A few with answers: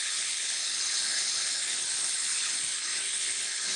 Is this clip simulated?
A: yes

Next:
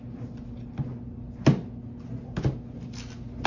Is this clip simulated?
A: no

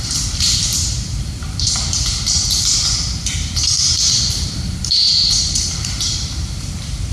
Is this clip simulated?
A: yes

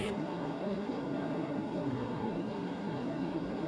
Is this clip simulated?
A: yes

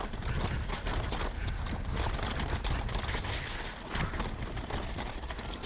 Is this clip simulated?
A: no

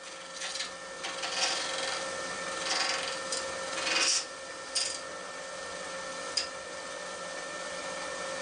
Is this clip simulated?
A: no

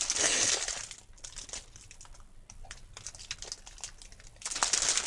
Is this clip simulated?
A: no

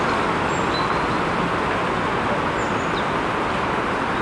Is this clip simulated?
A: no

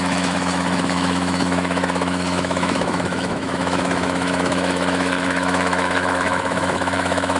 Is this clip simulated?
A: yes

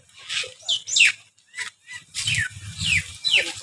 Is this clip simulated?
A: no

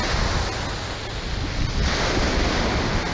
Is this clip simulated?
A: no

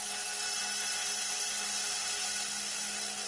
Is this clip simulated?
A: no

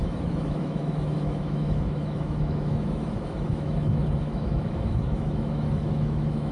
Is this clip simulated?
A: yes